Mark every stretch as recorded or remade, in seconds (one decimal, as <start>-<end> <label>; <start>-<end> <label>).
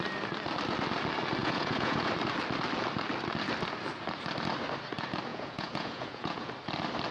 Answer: 0.0-1.4 recorded; 1.4-2.1 remade; 2.1-5.3 recorded; 5.3-6.5 remade; 6.5-7.1 recorded